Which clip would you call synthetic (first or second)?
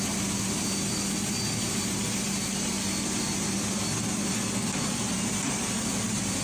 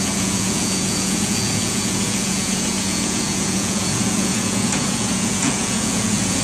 second